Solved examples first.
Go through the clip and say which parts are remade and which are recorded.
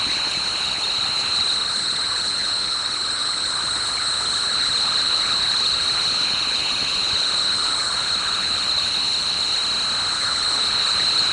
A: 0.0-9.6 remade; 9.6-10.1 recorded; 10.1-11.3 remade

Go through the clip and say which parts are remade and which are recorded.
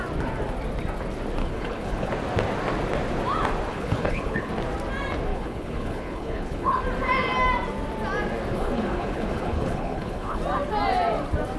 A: 0.0-1.4 recorded; 1.4-2.1 remade; 2.1-3.7 recorded; 3.7-4.5 remade; 4.5-5.3 recorded; 5.3-6.8 remade; 6.8-8.5 recorded; 8.5-10.4 remade; 10.4-11.6 recorded